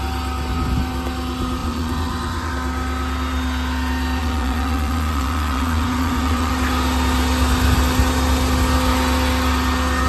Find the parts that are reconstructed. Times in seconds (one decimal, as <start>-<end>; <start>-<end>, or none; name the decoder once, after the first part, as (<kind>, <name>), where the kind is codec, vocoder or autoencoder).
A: 1.6-2.5 (vocoder, Vocos); 4.2-6.5